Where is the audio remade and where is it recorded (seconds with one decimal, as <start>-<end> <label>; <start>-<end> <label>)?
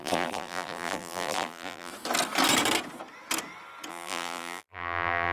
0.0-1.9 remade; 1.9-3.9 recorded; 3.9-5.3 remade